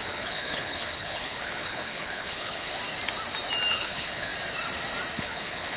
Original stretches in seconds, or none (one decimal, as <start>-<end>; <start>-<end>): 2.7-3.7; 4.3-5.2